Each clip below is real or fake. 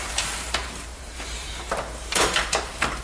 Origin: fake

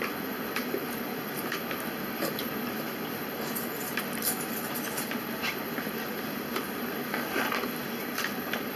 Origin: fake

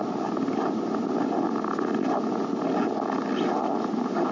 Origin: real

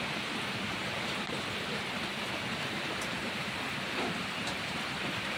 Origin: fake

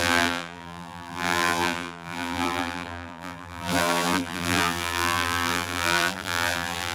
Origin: fake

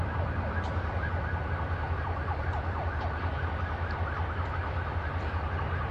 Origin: real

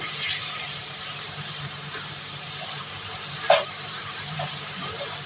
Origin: fake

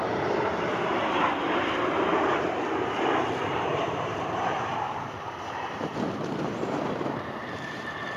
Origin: fake